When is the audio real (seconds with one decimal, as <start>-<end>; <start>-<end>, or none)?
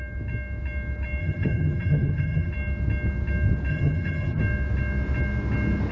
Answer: 0.0-1.2; 2.5-3.7; 4.4-5.9